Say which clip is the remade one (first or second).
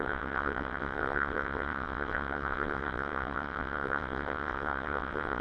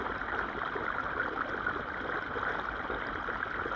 first